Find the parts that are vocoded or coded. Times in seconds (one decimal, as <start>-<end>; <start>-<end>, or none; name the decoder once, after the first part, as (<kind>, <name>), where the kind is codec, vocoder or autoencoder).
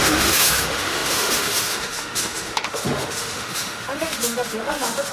0.0-5.1 (autoencoder, DAC-VAE)